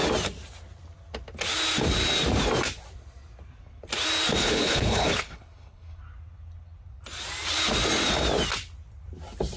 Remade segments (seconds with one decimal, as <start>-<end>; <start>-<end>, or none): 4.4-6.0